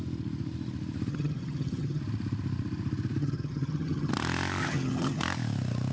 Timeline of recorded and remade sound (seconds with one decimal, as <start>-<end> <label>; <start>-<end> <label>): 0.0-1.1 recorded; 1.1-2.0 remade; 2.0-3.2 recorded; 3.2-4.1 remade; 4.1-4.6 recorded; 4.6-5.2 remade; 5.2-5.9 recorded